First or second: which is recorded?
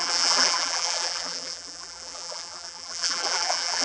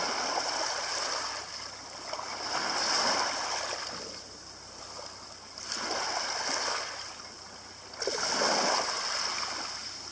second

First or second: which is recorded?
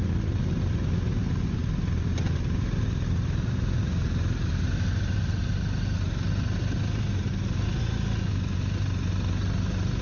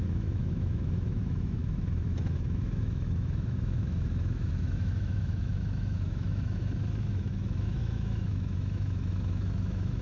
first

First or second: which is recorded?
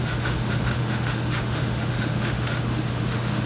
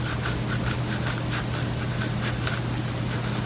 second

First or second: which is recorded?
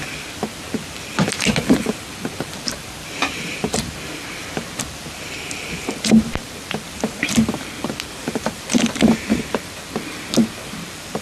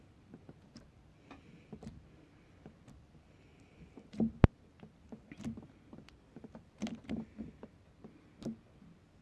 second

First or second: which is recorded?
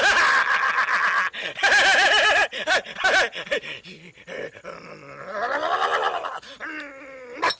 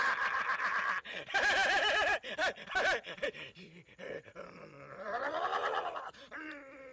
first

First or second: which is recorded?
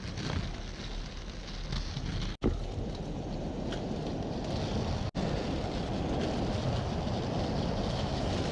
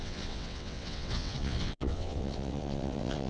first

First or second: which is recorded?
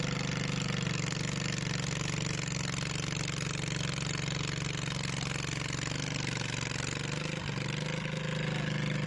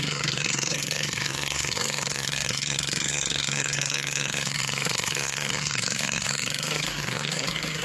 first